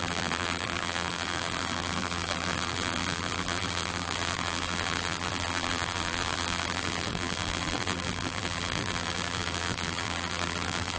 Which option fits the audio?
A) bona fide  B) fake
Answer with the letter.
B